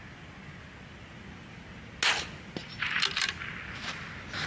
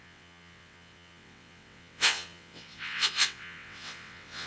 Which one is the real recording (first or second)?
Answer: first